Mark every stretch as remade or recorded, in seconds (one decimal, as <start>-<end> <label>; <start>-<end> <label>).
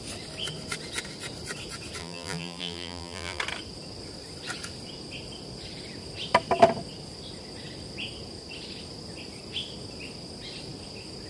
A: 0.0-2.0 recorded; 2.0-3.4 remade; 3.4-11.3 recorded